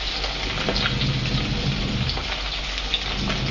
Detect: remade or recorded recorded